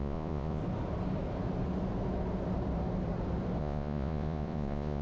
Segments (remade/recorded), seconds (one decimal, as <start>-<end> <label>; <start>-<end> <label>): 0.0-0.6 remade; 0.6-3.6 recorded; 3.6-5.0 remade